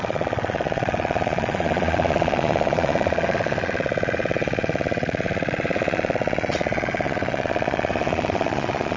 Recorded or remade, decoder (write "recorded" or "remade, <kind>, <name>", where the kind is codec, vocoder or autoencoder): remade, vocoder, Vocos